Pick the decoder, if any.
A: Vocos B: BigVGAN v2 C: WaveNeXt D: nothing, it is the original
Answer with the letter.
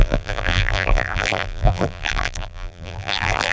B